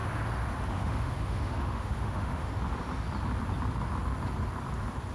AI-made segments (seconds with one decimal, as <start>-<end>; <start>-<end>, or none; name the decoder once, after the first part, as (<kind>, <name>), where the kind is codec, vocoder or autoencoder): 0.7-2.5 (autoencoder, DAC-VAE)